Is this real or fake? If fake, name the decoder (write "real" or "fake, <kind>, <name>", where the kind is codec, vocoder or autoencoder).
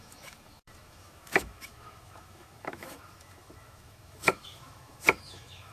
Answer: fake, autoencoder, DAC-VAE